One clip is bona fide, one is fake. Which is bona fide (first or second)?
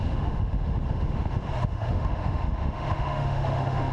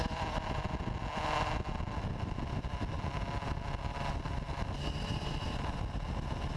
second